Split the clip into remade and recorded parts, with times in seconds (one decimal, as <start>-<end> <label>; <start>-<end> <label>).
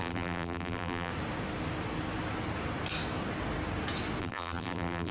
0.0-1.1 remade; 1.1-4.2 recorded; 4.2-5.1 remade